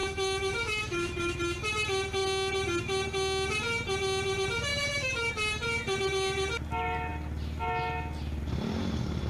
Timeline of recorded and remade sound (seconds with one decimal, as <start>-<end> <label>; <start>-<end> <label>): 0.0-1.4 remade; 1.4-4.7 recorded; 4.7-5.3 remade; 5.3-9.3 recorded